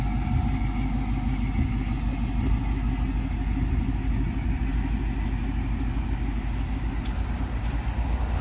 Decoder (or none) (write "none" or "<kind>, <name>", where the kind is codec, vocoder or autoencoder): none